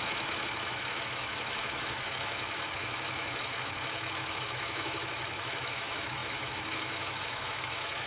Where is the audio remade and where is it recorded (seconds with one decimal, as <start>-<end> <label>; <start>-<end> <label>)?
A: 0.0-8.1 remade